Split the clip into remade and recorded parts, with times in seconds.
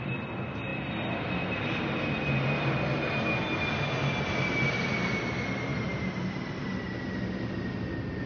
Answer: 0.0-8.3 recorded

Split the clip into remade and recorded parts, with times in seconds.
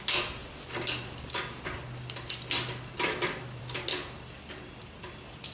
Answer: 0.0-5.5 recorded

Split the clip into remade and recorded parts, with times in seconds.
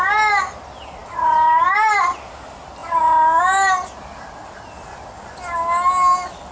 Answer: 0.0-6.5 recorded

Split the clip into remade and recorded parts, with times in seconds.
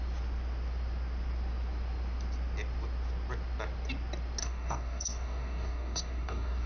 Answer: 0.0-4.4 recorded; 4.4-6.7 remade